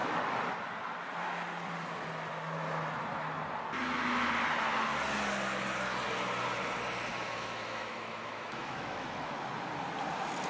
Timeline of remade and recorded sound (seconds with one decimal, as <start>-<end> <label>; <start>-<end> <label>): 0.0-7.1 recorded; 7.1-9.3 remade; 9.3-10.5 recorded